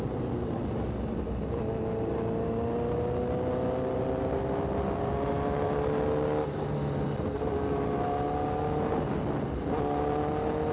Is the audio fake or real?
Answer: real